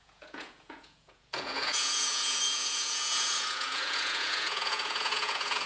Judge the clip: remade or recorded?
remade